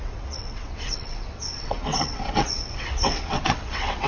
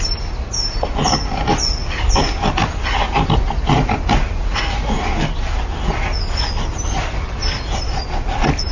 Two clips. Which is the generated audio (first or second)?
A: first